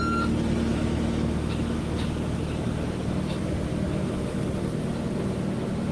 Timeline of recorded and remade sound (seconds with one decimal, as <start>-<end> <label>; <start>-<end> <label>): 0.0-0.7 recorded; 0.7-2.4 remade; 2.4-3.7 recorded; 3.7-4.4 remade; 4.4-5.9 recorded